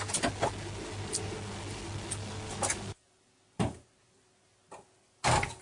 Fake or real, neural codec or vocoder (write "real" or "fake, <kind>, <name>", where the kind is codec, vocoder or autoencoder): real